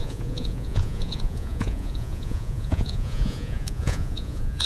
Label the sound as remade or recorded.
remade